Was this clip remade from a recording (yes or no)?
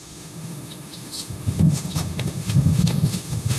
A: yes